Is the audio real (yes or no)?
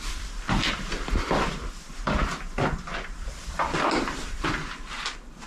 no